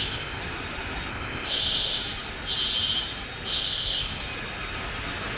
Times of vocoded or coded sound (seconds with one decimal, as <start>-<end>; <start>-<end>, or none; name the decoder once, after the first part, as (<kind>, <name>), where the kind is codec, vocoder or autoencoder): 0.0-0.4 (codec, ZipCodec); 1.1-2.0; 3.5-4.2